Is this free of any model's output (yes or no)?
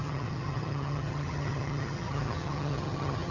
no